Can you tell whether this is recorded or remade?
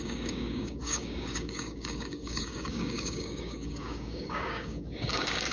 remade